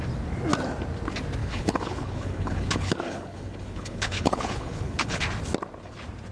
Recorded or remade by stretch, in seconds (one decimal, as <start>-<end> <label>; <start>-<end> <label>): 0.0-1.4 recorded; 1.4-5.2 remade; 5.2-6.3 recorded